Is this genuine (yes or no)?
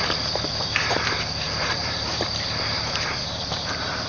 no